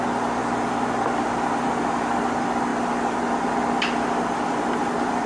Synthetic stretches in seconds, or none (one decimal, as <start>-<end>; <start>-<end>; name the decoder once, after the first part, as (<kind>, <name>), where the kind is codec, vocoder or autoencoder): none